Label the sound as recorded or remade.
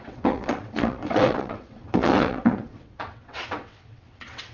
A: remade